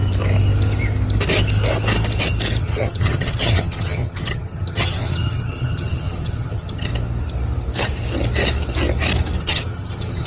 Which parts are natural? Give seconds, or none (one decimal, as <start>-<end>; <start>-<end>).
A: 0.0-2.6; 6.9-9.4